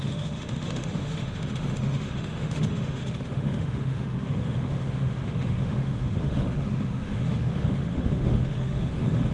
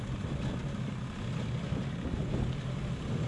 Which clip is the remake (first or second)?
first